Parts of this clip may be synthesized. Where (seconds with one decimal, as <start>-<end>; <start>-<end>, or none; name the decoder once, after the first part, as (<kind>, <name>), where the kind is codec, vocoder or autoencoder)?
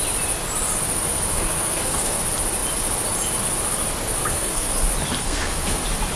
1.3-2.2 (codec, SNAC); 4.2-4.7; 5.2-5.8